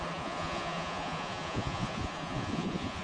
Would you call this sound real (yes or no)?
no